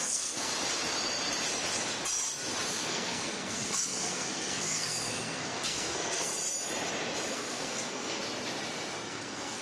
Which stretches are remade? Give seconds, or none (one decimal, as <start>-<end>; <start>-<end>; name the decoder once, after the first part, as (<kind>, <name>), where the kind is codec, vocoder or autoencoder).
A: 0.0-0.5 (codec, SNAC); 2.7-6.3; 7.3-8.2; 9.1-9.6